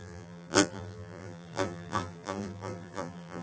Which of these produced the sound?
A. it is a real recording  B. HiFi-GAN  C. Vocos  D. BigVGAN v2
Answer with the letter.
D